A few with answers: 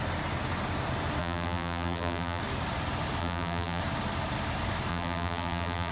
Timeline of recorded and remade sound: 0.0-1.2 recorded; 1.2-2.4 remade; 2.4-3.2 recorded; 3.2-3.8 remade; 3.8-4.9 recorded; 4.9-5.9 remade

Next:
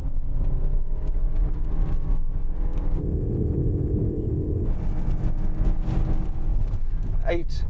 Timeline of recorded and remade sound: 0.0-7.7 recorded

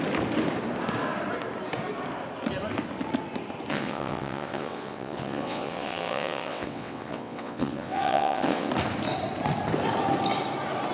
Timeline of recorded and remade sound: 0.0-3.7 recorded; 3.7-8.7 remade; 8.7-10.9 recorded